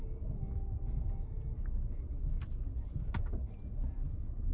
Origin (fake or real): real